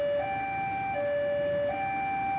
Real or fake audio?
real